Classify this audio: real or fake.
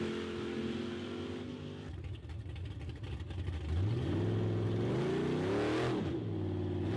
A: real